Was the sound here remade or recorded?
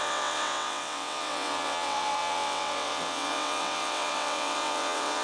remade